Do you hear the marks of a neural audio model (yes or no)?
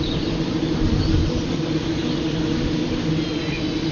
no